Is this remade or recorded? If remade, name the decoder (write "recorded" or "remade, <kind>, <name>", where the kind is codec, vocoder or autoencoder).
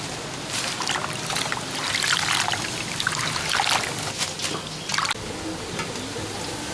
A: recorded